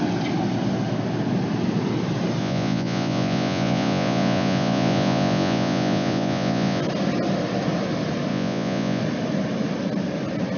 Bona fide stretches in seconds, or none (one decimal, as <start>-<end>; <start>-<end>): 0.0-2.4; 6.8-8.3; 9.0-10.6